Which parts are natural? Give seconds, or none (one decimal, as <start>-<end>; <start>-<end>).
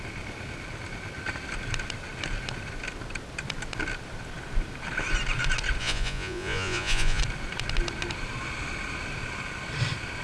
0.0-5.8; 7.2-10.2